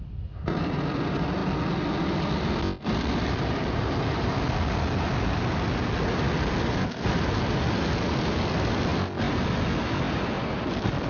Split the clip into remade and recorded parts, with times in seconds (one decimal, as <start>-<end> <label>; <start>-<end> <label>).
0.0-11.1 recorded